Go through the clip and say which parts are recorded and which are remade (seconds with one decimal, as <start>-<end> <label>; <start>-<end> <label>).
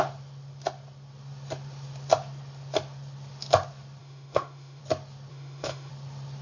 0.0-4.0 recorded; 4.0-4.8 remade; 4.8-5.3 recorded; 5.3-5.9 remade; 5.9-6.4 recorded